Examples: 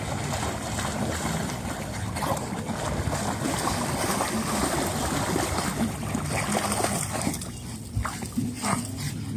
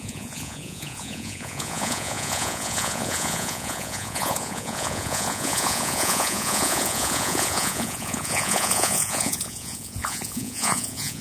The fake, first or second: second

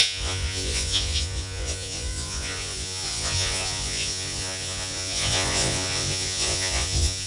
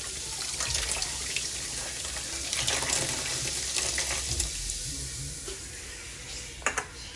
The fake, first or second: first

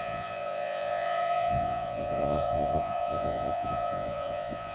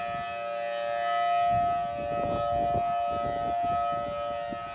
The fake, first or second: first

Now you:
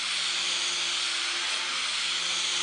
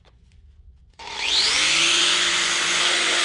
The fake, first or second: second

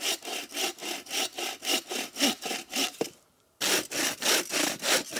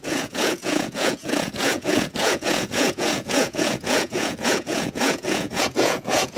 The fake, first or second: second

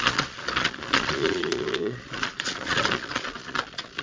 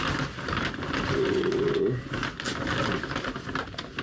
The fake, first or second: first